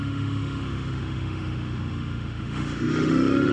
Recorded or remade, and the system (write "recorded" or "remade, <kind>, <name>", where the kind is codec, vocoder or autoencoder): remade, autoencoder, DAC-VAE